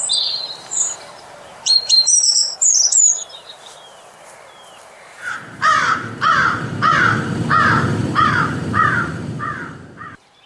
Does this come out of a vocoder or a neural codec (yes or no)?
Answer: yes